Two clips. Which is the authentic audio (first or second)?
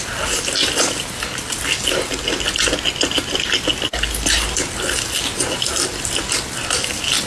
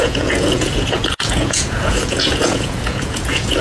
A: first